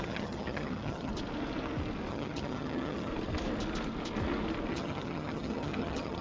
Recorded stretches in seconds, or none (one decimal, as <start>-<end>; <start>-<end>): 1.1-2.1; 3.1-4.7